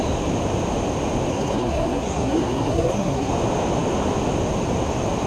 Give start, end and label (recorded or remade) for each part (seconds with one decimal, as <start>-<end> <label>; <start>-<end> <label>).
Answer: 0.0-1.3 recorded; 1.3-3.3 remade; 3.3-5.3 recorded